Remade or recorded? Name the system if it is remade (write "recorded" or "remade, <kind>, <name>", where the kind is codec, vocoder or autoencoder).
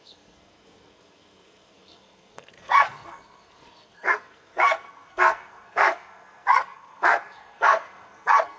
remade, codec, SNAC